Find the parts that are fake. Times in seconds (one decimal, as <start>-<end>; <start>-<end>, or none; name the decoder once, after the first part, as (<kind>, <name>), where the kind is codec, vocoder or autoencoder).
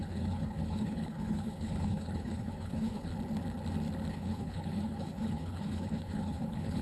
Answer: 0.0-3.1 (codec, HILCodec); 4.1-6.8